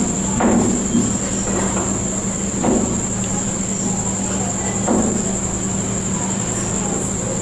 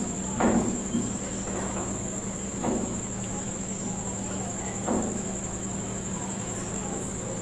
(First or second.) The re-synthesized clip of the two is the second